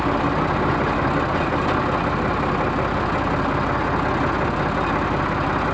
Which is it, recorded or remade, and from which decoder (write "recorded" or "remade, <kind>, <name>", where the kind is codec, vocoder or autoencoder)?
recorded